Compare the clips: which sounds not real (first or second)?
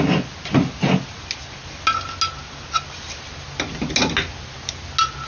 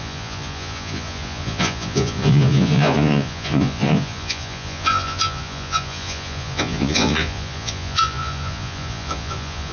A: second